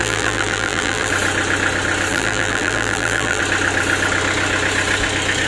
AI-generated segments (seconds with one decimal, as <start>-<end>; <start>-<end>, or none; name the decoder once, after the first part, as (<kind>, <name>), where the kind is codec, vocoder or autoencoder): 0.0-1.1 (vocoder, BigVGAN v2); 2.1-3.4